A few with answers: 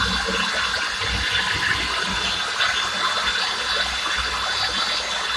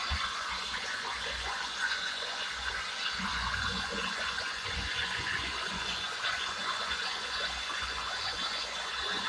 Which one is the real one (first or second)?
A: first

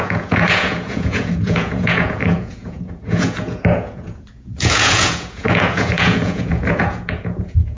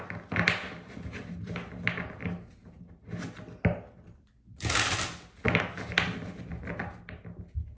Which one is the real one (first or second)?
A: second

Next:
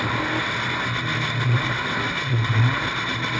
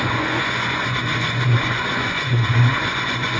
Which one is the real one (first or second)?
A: first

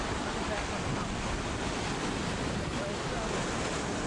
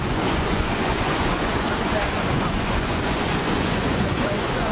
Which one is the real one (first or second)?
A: first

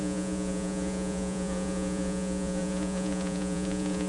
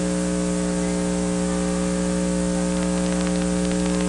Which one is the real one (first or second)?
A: second